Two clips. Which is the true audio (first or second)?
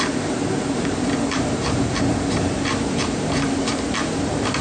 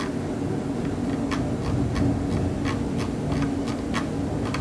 second